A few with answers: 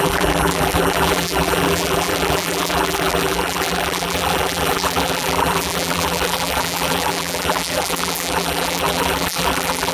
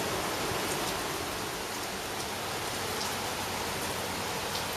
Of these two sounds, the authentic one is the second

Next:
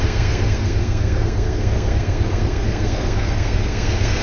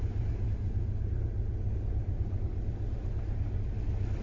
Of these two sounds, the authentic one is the second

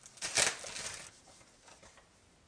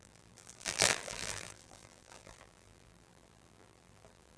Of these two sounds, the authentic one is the first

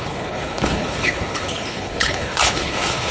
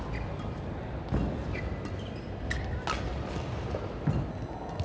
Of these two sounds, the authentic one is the second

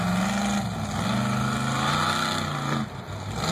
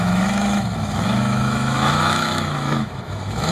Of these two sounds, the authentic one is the first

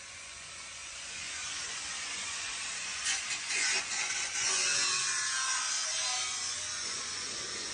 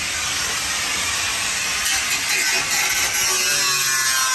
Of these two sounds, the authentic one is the second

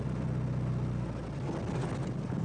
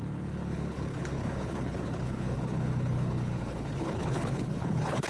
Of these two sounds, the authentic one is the first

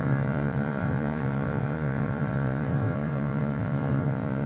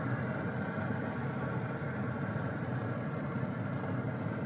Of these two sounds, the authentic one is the second